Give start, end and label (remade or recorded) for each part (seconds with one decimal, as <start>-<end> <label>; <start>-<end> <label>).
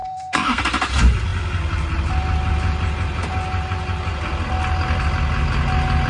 0.0-0.6 remade; 0.6-6.1 recorded